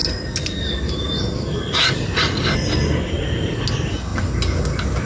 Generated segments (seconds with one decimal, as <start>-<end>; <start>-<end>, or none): none